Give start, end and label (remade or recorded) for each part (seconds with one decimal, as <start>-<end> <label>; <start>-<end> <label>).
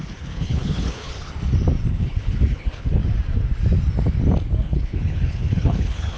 0.0-1.1 remade; 1.1-1.9 recorded; 1.9-3.0 remade; 3.0-4.6 recorded; 4.6-6.2 remade